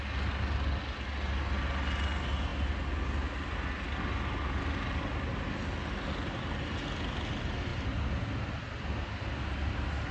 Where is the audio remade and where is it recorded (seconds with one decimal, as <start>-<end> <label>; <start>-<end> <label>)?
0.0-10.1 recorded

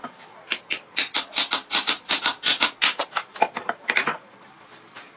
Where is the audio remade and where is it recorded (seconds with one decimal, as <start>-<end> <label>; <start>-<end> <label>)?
0.0-0.7 recorded; 0.7-2.5 remade; 2.5-3.0 recorded; 3.0-5.2 remade

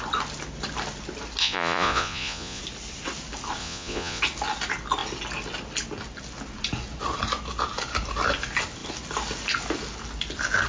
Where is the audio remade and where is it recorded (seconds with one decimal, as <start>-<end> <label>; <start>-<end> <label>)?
0.0-1.4 recorded; 1.4-2.6 remade; 2.6-3.6 recorded; 3.6-4.2 remade; 4.2-10.7 recorded

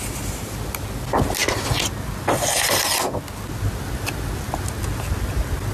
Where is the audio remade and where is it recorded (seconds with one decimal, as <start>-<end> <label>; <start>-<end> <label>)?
0.0-5.7 recorded